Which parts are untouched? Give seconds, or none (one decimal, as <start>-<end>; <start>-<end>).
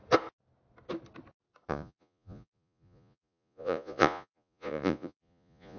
0.0-1.7